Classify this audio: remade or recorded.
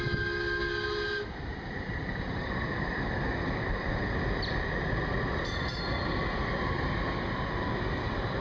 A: recorded